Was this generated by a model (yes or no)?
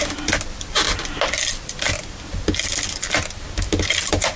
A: no